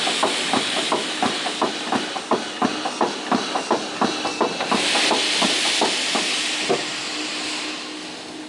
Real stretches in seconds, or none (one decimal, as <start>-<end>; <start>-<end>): 0.0-8.5